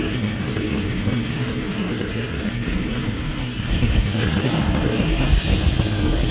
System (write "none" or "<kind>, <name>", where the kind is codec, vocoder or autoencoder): codec, SNAC